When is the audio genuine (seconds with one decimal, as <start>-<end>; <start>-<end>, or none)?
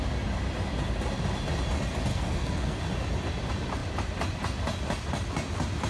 0.0-2.1; 2.8-5.9